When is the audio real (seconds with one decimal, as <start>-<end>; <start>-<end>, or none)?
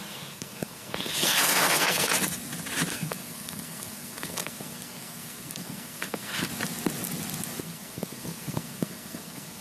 2.1-2.9; 6.5-7.6